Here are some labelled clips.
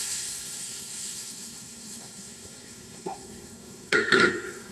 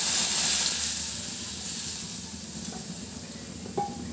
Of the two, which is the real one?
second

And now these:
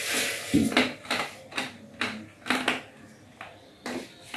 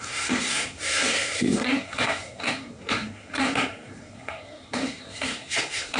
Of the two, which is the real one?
first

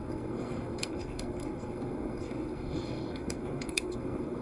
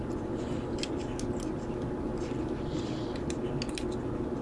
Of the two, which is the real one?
second